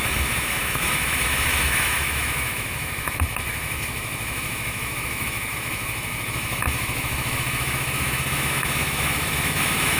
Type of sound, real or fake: fake